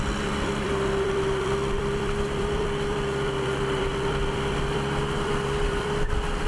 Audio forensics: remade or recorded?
remade